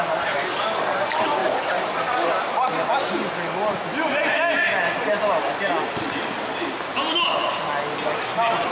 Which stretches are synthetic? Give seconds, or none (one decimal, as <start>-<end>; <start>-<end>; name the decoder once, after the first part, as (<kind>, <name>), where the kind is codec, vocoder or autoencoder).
none